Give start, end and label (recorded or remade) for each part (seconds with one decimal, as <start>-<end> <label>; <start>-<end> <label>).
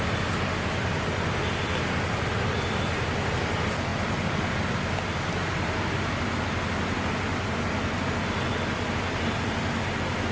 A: 0.0-10.3 recorded